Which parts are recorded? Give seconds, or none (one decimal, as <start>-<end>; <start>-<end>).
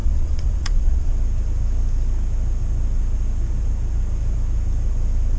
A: 1.1-5.4